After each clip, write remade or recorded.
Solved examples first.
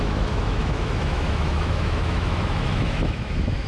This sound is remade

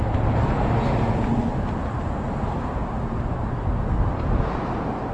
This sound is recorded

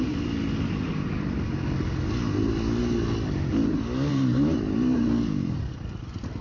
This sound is recorded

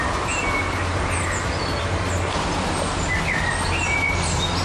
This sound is recorded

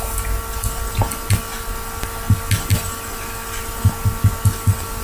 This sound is recorded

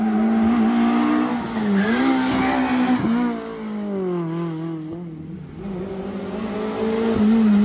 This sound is recorded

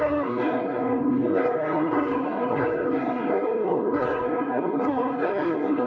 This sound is remade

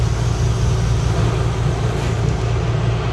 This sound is recorded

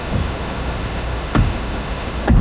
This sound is remade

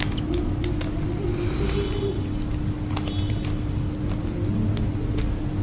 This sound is recorded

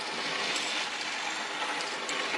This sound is recorded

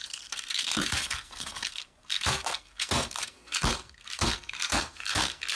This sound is remade